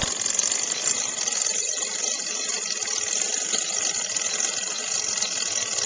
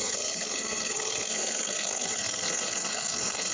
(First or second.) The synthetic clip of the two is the second